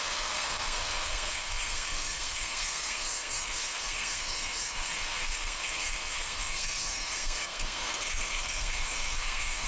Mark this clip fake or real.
fake